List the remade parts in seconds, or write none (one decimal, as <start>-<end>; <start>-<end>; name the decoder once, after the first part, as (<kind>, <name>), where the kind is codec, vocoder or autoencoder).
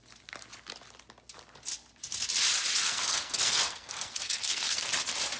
2.8-4.9 (codec, SNAC)